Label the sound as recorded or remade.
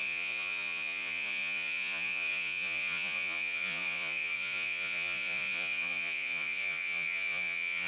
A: remade